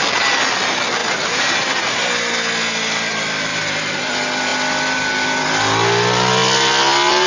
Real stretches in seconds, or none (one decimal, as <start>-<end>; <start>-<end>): 0.0-1.0; 2.0-3.5; 4.1-7.3